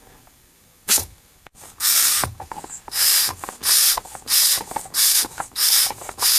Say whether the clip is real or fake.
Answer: fake